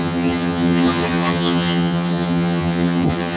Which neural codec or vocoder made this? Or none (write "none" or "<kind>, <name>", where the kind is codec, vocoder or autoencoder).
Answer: vocoder, HiFi-GAN